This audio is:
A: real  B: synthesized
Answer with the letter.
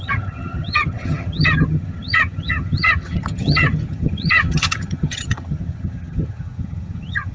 B